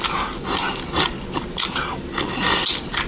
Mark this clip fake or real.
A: real